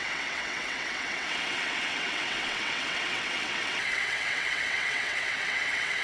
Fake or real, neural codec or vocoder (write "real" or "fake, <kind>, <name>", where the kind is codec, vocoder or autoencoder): fake, vocoder, WaveNeXt